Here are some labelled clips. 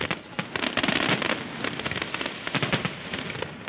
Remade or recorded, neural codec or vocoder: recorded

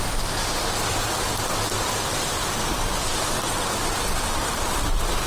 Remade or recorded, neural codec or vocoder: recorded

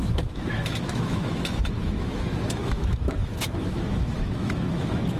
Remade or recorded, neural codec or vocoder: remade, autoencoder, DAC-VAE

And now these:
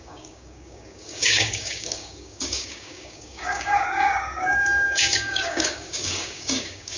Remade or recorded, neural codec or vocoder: remade, codec, DAC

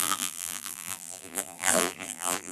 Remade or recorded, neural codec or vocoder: remade, vocoder, BigVGAN v2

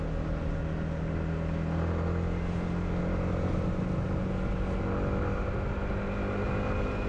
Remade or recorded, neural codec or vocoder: recorded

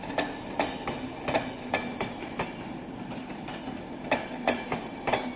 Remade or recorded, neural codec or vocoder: recorded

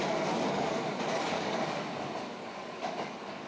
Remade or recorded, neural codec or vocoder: remade, codec, DAC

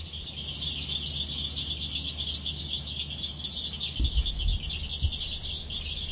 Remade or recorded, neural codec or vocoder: recorded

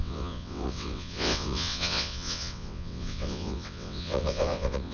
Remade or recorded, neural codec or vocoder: remade, vocoder, WaveNeXt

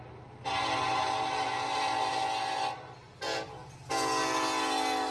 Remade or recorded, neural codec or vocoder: recorded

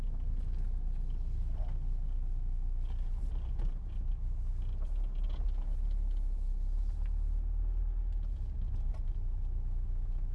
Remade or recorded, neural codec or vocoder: recorded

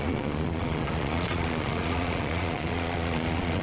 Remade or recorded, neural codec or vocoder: remade, vocoder, Vocos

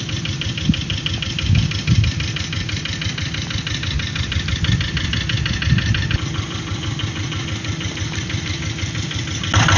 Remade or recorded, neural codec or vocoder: recorded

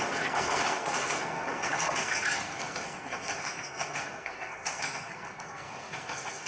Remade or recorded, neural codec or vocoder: remade, codec, SNAC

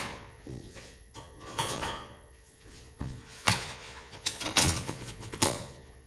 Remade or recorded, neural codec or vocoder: remade, vocoder, Vocos